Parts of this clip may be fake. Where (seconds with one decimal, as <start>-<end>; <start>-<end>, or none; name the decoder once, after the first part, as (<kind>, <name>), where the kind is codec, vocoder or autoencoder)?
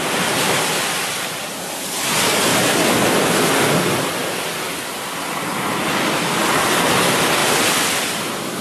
7.4-8.6 (vocoder, BigVGAN v2)